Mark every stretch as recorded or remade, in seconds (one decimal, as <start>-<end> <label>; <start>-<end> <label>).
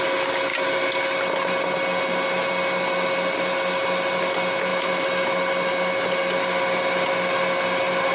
0.0-8.1 recorded